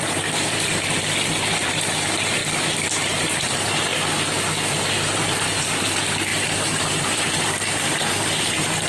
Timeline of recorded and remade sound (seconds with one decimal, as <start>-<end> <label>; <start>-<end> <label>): 0.0-2.4 remade; 2.4-3.2 recorded; 3.2-3.9 remade; 3.9-4.7 recorded; 4.7-8.9 remade